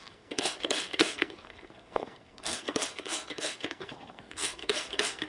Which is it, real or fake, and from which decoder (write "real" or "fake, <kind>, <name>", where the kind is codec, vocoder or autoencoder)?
fake, codec, SNAC